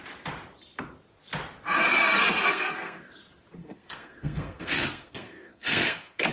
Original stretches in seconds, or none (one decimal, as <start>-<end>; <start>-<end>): 0.0-2.5; 3.1-3.6